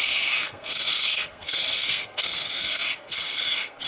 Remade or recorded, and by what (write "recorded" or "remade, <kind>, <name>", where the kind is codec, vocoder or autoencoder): remade, codec, SNAC